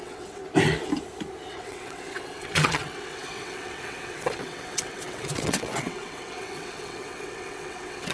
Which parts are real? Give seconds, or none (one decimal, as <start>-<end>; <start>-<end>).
0.4-1.5